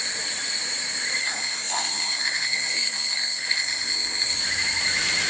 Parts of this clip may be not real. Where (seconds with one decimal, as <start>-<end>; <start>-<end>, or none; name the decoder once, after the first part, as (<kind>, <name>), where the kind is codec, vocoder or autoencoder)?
1.2-4.4 (codec, SNAC)